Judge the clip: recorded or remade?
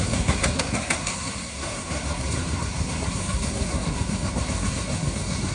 remade